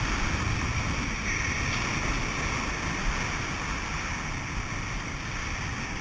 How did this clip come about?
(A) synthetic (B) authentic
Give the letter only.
B